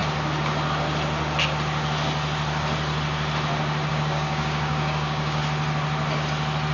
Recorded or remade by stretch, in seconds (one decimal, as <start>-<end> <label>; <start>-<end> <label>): 0.0-3.9 recorded; 3.9-5.4 remade; 5.4-6.7 recorded